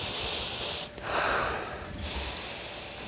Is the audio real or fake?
fake